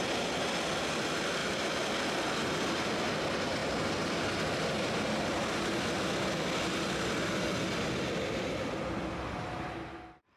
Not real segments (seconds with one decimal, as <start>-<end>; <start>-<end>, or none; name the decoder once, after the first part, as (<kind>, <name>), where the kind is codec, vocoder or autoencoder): none